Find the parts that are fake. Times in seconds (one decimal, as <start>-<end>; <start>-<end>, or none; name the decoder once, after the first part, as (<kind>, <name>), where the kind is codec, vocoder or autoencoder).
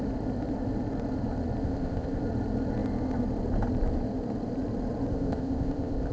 1.6-2.2 (codec, ZipCodec); 5.1-6.1